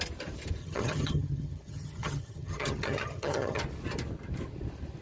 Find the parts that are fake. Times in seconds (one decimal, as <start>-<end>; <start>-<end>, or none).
0.6-3.6